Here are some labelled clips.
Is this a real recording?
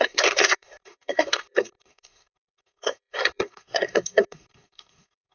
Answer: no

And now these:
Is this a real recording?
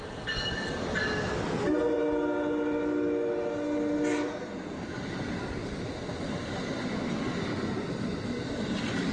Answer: yes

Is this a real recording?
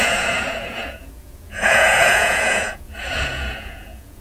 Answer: no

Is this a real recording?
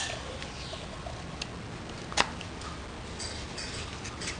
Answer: yes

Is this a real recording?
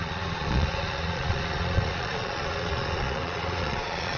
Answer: no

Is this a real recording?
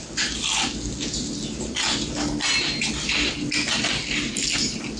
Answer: yes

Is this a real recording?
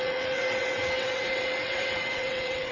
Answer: no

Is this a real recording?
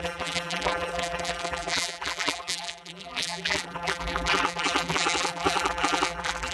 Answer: no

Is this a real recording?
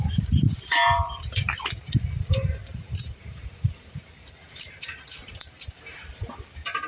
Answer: no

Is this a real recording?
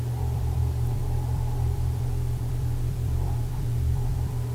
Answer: no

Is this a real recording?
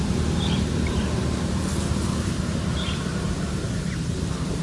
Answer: no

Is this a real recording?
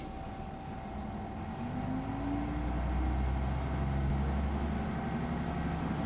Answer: yes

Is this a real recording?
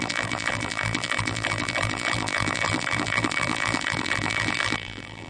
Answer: no